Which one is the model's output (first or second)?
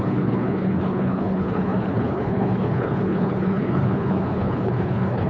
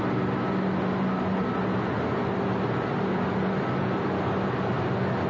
first